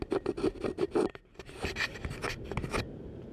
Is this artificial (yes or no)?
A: no